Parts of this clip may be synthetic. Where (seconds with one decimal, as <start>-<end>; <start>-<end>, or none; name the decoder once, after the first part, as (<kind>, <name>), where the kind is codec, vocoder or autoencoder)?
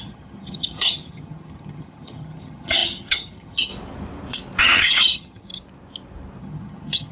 0.0-3.7 (vocoder, HiFi-GAN); 4.6-5.5; 6.4-7.1